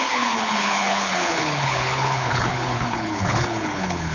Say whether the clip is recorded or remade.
remade